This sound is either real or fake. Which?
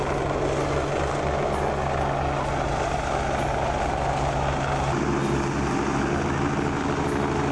real